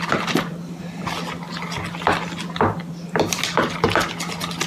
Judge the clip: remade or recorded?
recorded